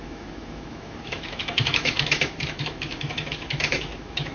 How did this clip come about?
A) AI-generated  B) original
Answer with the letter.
A